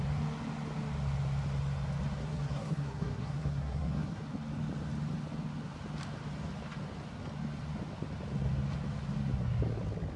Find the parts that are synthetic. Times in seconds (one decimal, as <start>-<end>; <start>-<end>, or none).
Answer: 2.2-4.2